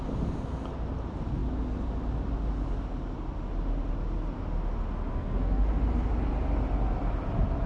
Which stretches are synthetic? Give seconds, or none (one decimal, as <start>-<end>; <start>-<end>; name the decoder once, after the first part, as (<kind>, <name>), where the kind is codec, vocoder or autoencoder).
5.1-5.8 (codec, SNAC)